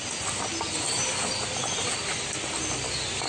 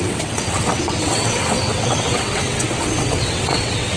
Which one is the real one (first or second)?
first